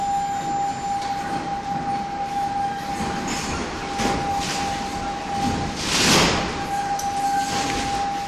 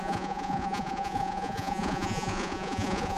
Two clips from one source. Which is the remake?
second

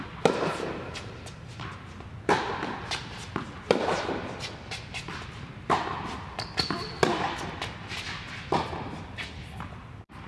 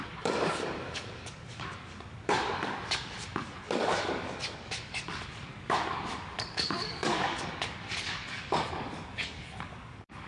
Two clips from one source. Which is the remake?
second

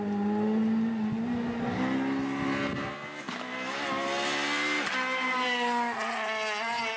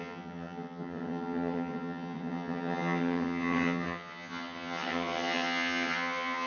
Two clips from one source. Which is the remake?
second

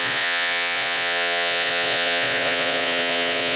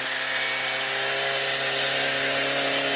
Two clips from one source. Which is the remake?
first